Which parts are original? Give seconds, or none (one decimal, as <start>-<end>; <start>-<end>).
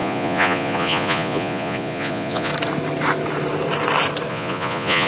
2.5-4.3